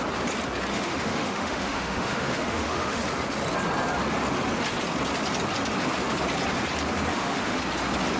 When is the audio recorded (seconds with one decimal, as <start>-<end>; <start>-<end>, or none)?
0.0-0.7; 3.0-7.1; 7.6-8.2